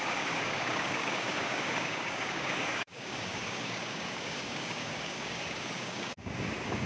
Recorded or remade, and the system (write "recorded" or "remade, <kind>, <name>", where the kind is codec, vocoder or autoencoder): remade, codec, DAC